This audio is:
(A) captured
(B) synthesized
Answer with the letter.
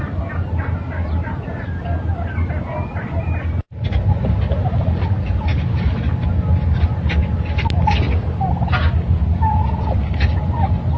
A